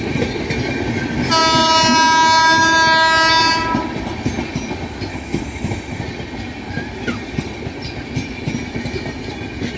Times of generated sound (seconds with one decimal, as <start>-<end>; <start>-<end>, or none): 5.1-6.0